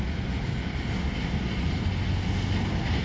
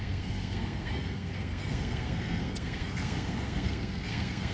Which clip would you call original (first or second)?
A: first